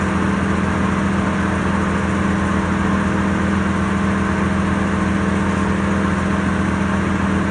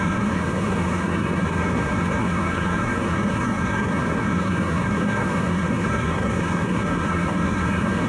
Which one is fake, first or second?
second